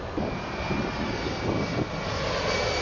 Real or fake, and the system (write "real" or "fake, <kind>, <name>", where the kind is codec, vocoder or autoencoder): real